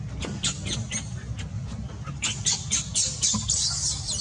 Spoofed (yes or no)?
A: no